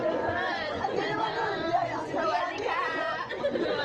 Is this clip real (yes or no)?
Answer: no